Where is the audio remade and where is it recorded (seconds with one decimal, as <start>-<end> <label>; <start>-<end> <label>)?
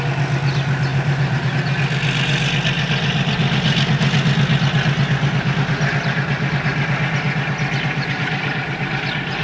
0.0-0.9 recorded; 0.9-1.5 remade; 1.5-9.4 recorded